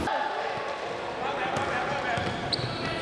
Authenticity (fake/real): real